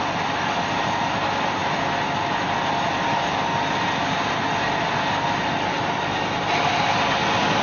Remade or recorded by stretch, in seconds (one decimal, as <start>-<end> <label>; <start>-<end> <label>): 0.0-7.6 recorded